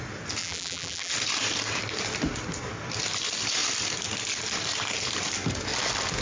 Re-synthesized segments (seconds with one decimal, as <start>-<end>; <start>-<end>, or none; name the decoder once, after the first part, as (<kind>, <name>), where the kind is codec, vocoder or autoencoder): 0.4-1.1 (vocoder, BigVGAN v2)